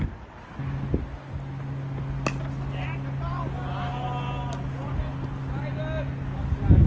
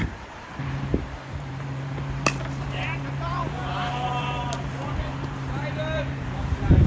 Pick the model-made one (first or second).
second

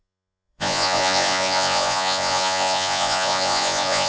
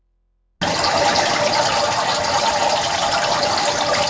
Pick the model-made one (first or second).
first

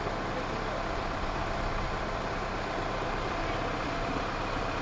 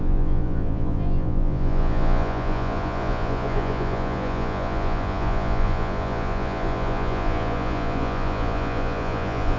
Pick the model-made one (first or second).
second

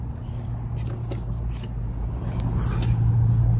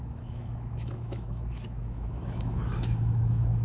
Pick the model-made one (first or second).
second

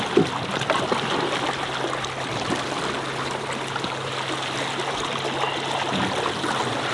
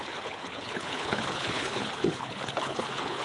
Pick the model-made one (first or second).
second